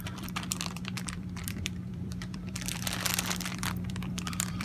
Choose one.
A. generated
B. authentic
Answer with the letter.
A